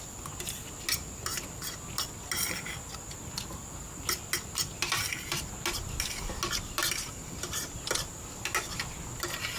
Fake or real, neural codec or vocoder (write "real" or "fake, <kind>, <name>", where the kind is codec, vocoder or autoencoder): real